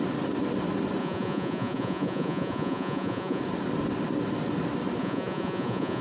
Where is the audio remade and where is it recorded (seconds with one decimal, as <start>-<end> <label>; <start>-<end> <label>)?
0.0-1.0 recorded; 1.0-3.4 remade; 3.4-5.0 recorded; 5.0-6.0 remade